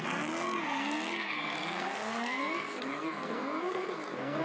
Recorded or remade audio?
remade